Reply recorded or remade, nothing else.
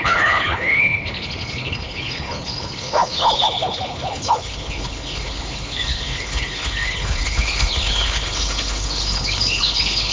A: remade